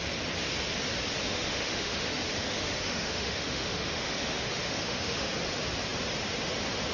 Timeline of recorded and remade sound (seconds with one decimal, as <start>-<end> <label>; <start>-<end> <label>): 0.0-1.2 recorded; 1.2-5.3 remade; 5.3-6.9 recorded

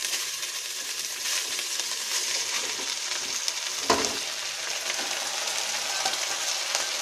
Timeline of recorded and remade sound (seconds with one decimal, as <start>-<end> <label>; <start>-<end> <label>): 0.0-3.4 remade; 3.4-7.0 recorded

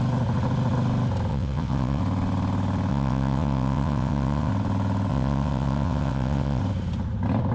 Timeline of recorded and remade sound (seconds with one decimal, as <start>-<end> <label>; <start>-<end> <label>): 0.0-1.3 recorded; 1.3-2.0 remade; 2.0-2.9 recorded; 2.9-4.5 remade; 4.5-5.1 recorded; 5.1-6.6 remade; 6.6-7.5 recorded

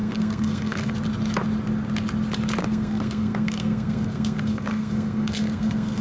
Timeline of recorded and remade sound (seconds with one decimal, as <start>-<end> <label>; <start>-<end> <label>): 0.0-0.9 remade; 0.9-2.6 recorded; 2.6-6.0 remade

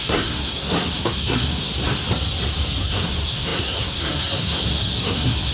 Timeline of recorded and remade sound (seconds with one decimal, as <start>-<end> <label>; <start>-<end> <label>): 0.0-1.7 remade; 1.7-2.8 recorded; 2.8-5.5 remade